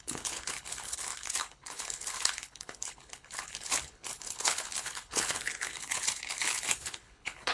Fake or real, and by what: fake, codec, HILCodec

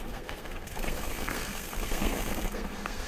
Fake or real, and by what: fake, codec, SNAC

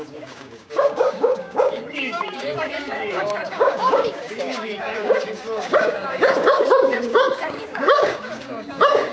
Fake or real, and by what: fake, codec, DAC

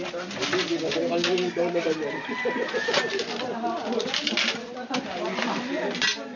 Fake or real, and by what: real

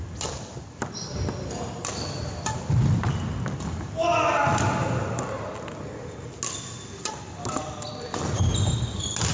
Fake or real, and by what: real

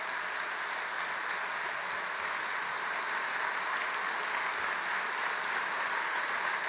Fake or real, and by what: real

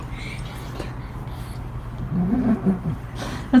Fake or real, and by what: real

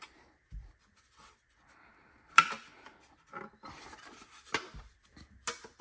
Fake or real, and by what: real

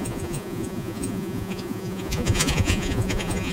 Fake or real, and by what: fake, vocoder, Vocos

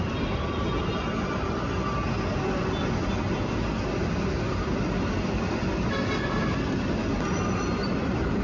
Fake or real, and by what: real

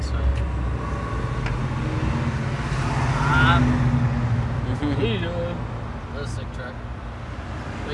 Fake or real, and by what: real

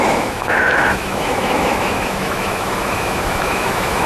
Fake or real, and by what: fake, autoencoder, DAC-VAE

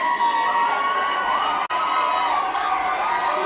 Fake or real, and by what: real